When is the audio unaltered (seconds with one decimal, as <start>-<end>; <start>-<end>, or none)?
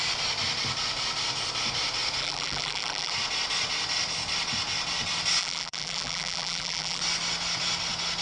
0.0-2.2; 3.1-5.4; 7.0-8.2